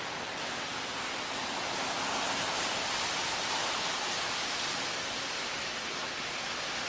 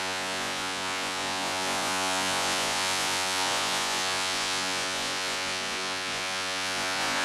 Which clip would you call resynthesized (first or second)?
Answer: second